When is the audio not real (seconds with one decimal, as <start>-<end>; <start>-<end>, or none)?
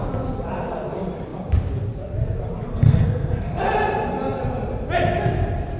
2.7-3.6